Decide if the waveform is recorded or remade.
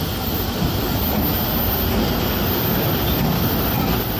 recorded